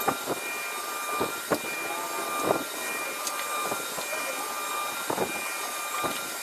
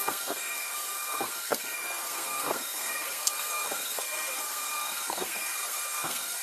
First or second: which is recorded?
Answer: first